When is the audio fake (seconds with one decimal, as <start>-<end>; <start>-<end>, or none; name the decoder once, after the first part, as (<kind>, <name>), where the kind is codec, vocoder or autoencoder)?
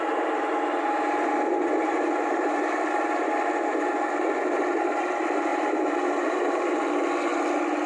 5.5-6.8 (vocoder, BigVGAN v2)